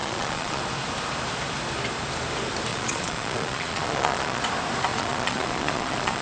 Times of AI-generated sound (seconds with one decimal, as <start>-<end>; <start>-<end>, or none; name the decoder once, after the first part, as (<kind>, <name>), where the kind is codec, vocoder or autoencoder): 0.0-0.6 (vocoder, Vocos); 2.7-4.4; 4.9-6.2